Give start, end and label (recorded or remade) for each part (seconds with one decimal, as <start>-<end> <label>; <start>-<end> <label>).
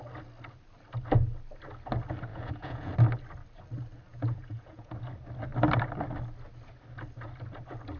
0.0-2.3 recorded; 2.3-2.9 remade; 2.9-4.1 recorded; 4.1-4.9 remade; 4.9-8.0 recorded